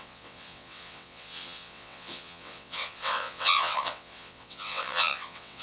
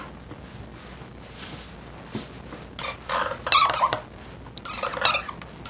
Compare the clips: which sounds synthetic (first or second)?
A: first